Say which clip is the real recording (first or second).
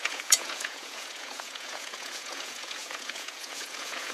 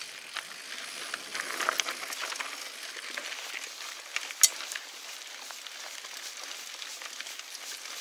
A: second